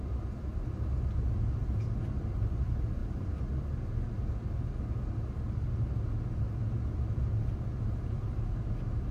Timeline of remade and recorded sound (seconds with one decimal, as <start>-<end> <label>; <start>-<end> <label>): 0.0-9.1 recorded